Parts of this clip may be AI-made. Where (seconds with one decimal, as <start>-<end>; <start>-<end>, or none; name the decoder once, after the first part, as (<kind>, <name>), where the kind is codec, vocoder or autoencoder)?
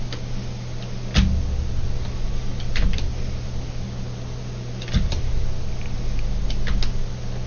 none